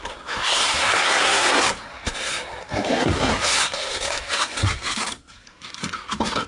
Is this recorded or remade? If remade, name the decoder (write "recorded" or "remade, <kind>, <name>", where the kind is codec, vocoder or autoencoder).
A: remade, codec, SNAC